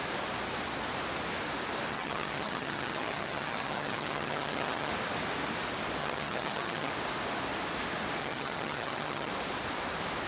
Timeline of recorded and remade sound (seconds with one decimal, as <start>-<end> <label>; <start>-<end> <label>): 0.0-1.9 recorded; 1.9-4.9 remade; 4.9-6.0 recorded; 6.0-6.9 remade; 6.9-8.2 recorded; 8.2-9.3 remade; 9.3-10.3 recorded

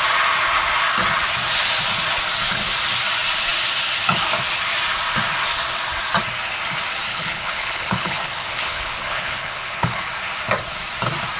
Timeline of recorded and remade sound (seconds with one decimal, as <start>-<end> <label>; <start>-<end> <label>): 0.0-7.1 recorded; 7.1-10.0 remade; 10.0-11.4 recorded

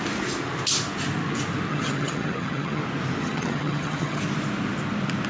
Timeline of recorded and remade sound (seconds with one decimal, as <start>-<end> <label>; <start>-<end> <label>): 0.0-1.7 recorded; 1.7-2.8 remade; 2.8-3.2 recorded; 3.2-4.2 remade; 4.2-5.3 recorded

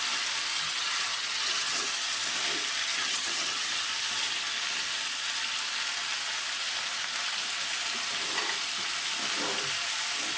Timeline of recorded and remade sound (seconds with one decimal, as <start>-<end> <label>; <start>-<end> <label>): 0.0-0.5 recorded; 0.5-2.1 remade; 2.1-2.8 recorded; 2.8-3.7 remade; 3.7-10.4 recorded

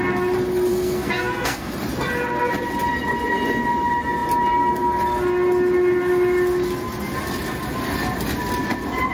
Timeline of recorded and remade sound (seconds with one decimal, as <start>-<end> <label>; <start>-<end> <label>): 0.0-0.7 recorded; 0.7-1.7 remade; 1.7-9.1 recorded